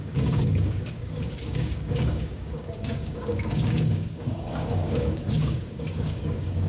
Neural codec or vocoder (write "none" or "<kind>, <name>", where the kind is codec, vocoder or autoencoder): codec, DAC